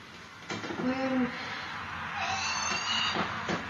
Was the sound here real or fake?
real